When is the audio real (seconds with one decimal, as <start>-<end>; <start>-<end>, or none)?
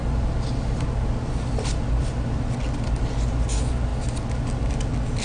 0.0-5.2